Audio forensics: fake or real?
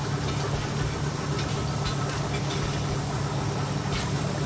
real